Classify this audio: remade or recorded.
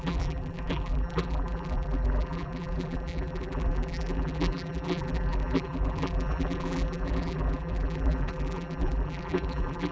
remade